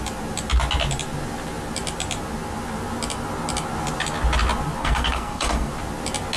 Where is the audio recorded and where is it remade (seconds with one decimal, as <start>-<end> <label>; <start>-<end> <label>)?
0.0-4.8 recorded; 4.8-5.7 remade; 5.7-6.4 recorded